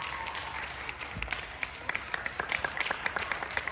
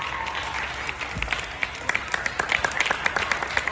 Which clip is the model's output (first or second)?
first